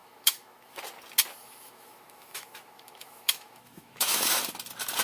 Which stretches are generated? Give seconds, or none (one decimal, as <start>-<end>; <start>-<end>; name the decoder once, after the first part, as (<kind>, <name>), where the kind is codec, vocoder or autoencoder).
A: 0.0-0.8 (autoencoder, DAC-VAE); 1.4-4.4